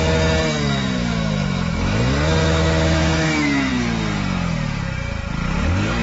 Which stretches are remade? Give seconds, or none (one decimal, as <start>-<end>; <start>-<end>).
1.0-2.0; 2.4-3.7